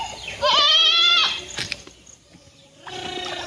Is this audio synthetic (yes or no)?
no